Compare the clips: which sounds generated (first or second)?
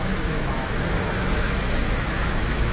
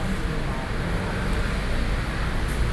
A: first